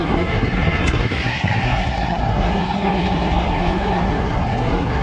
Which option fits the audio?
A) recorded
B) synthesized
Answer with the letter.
B